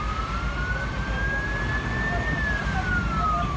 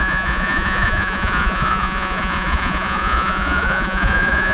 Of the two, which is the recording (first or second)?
first